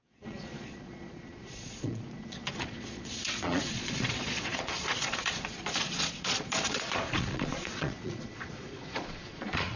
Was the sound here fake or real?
fake